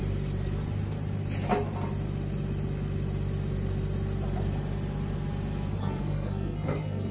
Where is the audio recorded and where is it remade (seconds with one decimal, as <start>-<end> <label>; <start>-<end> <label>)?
0.0-5.8 recorded; 5.8-7.1 remade